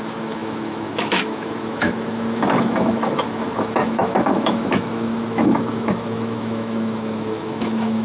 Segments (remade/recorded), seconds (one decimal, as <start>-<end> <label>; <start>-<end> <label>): 0.0-8.0 remade